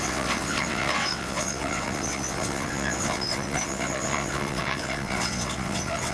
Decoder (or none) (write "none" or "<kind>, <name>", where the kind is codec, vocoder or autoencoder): vocoder, WaveNeXt